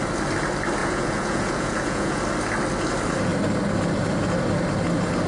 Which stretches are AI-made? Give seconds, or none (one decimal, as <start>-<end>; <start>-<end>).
0.8-2.2